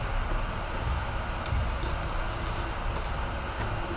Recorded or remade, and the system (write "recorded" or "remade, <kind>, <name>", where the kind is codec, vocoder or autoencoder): recorded